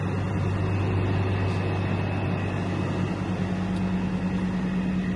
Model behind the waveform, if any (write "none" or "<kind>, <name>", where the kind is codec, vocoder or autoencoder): none